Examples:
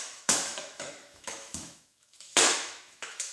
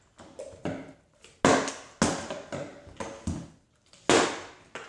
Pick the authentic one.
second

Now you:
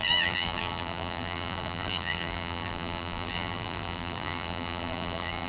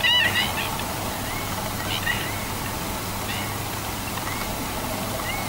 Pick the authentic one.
second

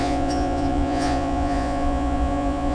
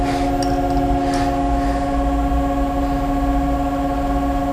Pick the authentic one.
second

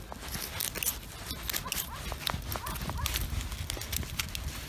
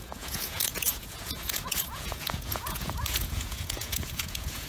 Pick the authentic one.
first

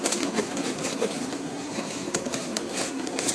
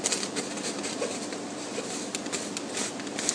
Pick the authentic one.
second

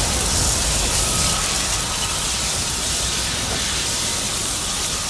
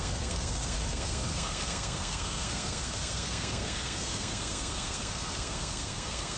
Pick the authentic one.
first